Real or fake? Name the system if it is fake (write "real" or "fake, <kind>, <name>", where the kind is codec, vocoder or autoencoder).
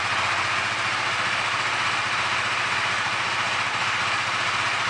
real